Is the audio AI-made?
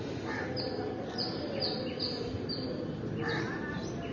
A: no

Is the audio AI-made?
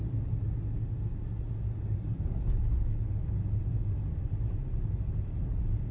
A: no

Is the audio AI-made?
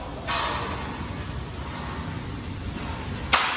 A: no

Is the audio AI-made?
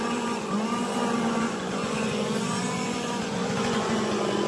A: yes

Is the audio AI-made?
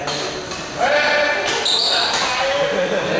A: no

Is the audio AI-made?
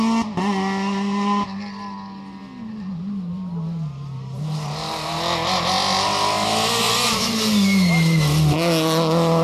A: no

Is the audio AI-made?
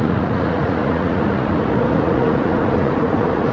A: yes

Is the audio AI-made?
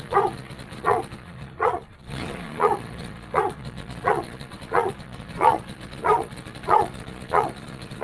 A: yes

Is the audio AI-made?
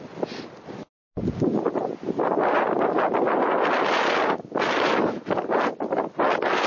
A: no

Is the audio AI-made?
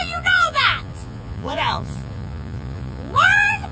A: yes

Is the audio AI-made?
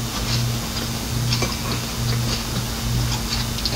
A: no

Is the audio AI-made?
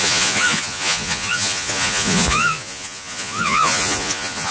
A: yes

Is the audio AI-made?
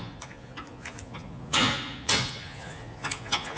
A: yes